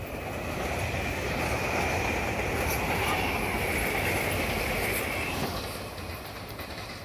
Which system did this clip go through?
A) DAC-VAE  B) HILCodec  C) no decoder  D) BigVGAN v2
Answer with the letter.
C